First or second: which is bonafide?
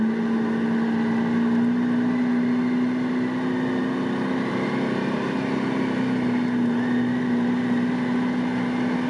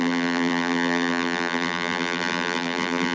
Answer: first